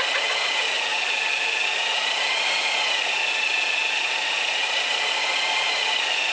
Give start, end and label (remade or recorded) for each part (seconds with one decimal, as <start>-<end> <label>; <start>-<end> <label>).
0.0-0.9 recorded; 0.9-2.4 remade; 2.4-4.6 recorded; 4.6-5.2 remade; 5.2-6.3 recorded